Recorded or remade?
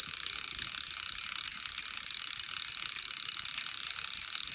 recorded